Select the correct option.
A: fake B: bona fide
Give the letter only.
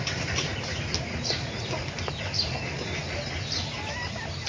B